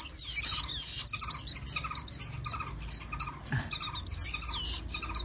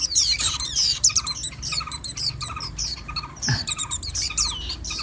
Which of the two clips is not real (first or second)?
second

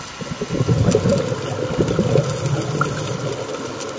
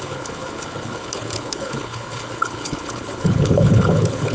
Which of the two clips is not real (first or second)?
second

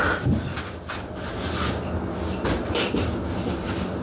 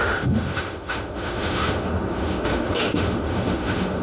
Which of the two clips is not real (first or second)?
second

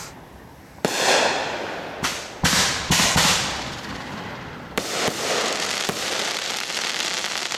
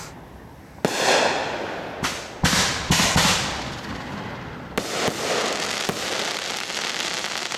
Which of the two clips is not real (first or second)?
first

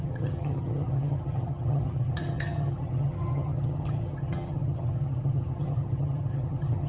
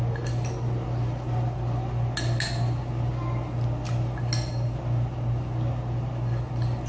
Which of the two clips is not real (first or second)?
first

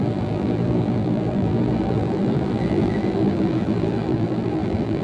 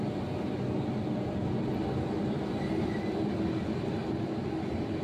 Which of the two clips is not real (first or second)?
first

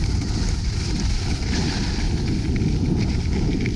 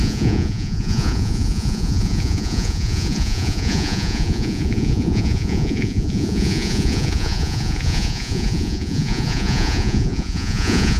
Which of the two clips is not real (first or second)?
second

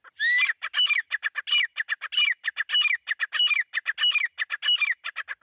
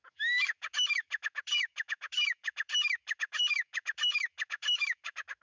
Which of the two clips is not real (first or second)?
second